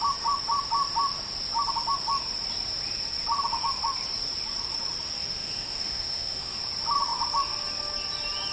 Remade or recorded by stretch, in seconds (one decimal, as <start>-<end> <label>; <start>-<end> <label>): 0.0-5.2 recorded; 5.2-6.6 remade; 6.6-8.5 recorded